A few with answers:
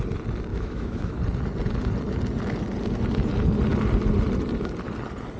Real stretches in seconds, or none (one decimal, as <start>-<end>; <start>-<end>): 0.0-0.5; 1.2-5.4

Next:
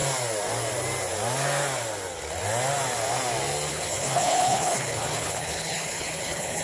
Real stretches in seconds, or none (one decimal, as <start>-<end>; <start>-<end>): 0.0-3.7

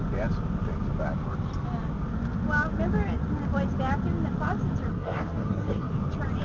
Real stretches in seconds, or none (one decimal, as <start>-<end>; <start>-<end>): 0.0-4.9; 5.9-6.4

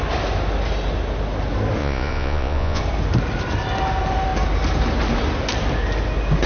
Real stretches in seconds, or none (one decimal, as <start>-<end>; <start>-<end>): 0.0-1.8; 2.8-6.5